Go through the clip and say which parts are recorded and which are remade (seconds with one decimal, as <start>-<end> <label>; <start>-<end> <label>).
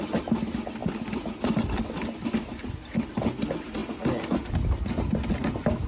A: 0.0-5.9 recorded